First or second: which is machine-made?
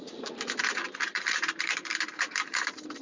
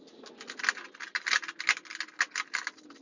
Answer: first